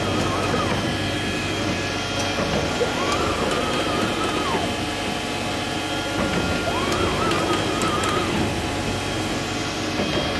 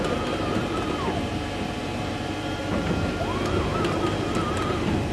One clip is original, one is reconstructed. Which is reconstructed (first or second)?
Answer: second